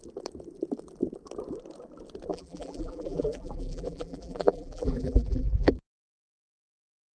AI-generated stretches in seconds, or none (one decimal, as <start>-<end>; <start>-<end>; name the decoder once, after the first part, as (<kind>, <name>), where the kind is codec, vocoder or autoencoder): 2.3-5.7 (vocoder, BigVGAN v2)